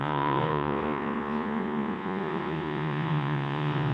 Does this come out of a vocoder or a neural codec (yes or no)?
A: yes